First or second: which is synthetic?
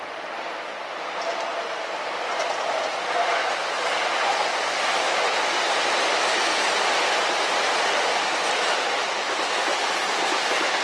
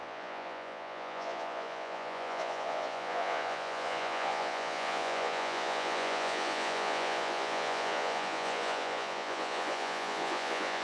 second